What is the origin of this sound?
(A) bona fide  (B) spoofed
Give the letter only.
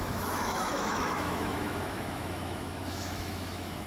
B